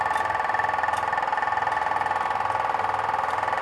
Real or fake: real